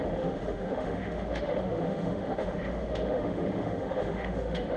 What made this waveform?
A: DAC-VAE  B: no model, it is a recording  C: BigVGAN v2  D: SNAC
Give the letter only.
A